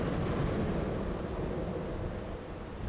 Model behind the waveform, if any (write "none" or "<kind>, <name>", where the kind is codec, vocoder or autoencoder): none